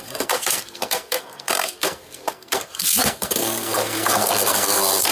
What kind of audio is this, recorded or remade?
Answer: remade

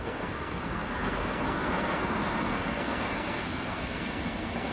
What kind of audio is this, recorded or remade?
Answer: remade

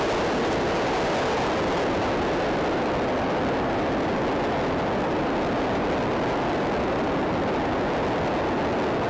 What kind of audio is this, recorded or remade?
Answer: recorded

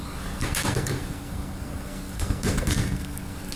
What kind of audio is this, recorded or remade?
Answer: remade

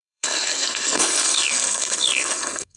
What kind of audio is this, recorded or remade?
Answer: remade